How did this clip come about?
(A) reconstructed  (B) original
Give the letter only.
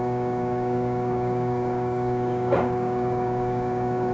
A